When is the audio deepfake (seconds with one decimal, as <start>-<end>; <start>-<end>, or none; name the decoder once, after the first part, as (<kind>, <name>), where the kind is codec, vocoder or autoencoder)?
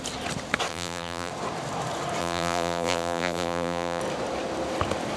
0.7-1.3 (vocoder, BigVGAN v2); 2.2-4.0